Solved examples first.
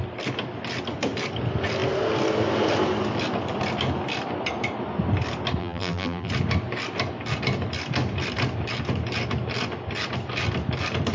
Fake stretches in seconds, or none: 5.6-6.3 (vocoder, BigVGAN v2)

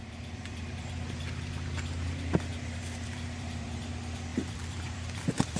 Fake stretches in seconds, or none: 0.0-0.9 (vocoder, BigVGAN v2); 2.5-3.8; 4.3-5.6

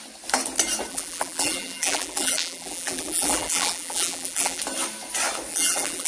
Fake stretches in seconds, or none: 0.9-4.6 (vocoder, BigVGAN v2); 5.5-6.1

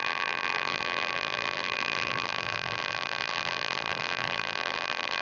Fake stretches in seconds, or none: 0.0-5.2 (vocoder, BigVGAN v2)

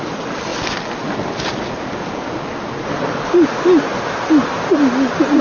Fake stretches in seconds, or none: 0.5-1.8 (vocoder, BigVGAN v2)

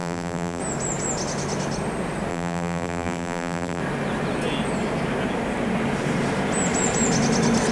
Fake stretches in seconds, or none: 0.0-0.6 (vocoder, BigVGAN v2); 2.3-3.8

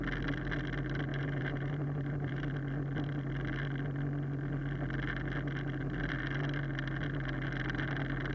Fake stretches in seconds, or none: 1.1-2.4 (vocoder, BigVGAN v2)

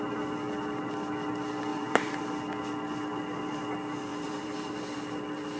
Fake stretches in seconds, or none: 1.7-2.2 (vocoder, BigVGAN v2); 4.1-4.8